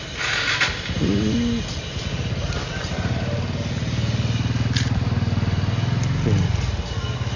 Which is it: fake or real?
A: real